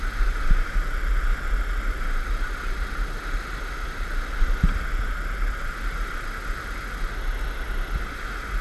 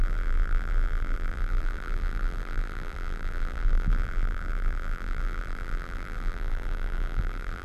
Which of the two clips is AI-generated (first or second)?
second